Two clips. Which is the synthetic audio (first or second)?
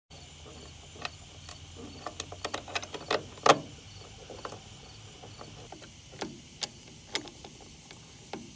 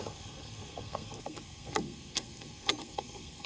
second